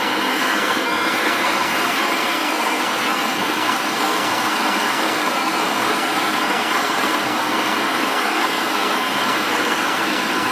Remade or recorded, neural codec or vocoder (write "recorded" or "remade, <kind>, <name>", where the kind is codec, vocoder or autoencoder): remade, codec, SNAC